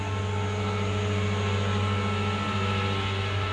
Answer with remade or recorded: recorded